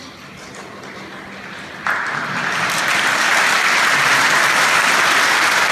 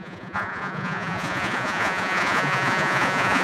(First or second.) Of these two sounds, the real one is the first